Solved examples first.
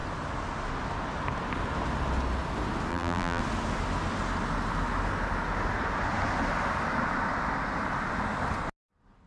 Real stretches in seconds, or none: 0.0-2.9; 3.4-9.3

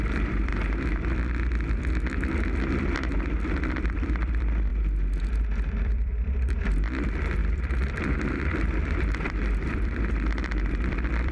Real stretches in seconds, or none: 0.5-3.5; 4.7-5.4